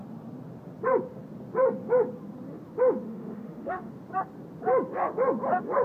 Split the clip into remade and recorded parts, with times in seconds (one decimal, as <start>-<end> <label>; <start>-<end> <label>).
0.0-3.1 recorded; 3.1-3.9 remade; 3.9-5.8 recorded

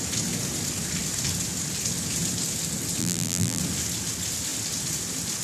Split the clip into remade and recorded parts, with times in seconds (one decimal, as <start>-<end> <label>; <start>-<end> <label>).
0.0-3.0 recorded; 3.0-3.6 remade; 3.6-5.4 recorded